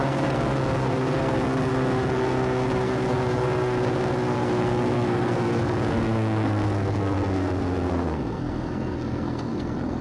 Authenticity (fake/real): fake